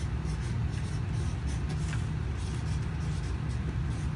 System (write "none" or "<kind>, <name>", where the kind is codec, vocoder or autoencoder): none